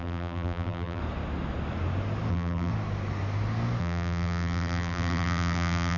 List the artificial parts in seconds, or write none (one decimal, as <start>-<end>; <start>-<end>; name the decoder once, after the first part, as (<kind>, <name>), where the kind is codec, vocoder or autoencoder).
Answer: 0.0-1.0 (vocoder, BigVGAN v2); 2.3-2.7; 3.8-6.0